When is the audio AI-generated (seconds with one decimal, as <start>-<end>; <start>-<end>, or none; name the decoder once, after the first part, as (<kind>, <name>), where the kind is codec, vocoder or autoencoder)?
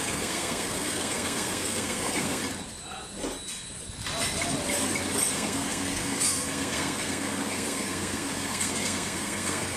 0.0-2.4 (codec, SNAC); 5.3-9.8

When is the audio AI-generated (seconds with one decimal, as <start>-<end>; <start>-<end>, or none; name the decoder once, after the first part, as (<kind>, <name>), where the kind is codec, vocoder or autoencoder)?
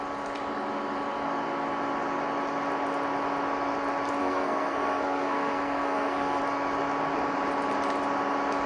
4.2-6.4 (codec, SNAC)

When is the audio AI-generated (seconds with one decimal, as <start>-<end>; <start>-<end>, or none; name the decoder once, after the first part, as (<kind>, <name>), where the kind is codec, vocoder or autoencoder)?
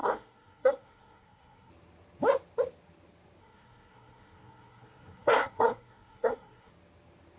0.0-1.7 (codec, SNAC); 3.4-6.7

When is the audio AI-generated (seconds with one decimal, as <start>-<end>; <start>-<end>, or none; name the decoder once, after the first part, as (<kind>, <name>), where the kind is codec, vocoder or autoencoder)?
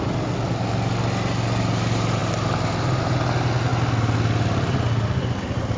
none